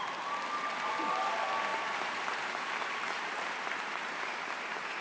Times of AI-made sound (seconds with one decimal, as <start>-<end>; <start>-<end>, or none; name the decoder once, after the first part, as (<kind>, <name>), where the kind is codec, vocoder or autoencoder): 1.7-5.0 (vocoder, BigVGAN v2)